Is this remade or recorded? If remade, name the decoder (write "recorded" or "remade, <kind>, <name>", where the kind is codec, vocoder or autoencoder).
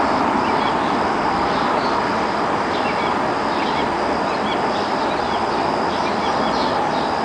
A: recorded